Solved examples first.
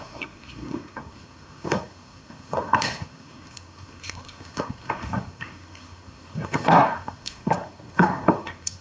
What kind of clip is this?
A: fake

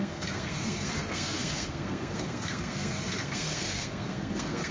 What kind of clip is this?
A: fake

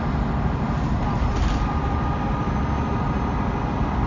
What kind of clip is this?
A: real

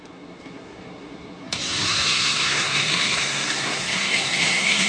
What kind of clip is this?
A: fake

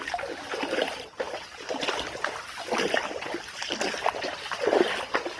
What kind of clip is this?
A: real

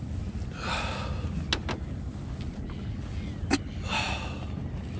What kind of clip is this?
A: real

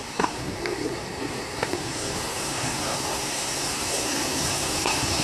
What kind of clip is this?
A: fake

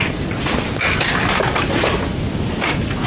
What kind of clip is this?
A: real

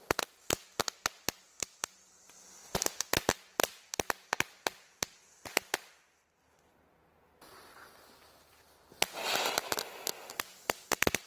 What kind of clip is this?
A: real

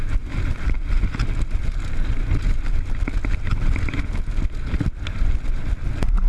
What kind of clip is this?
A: real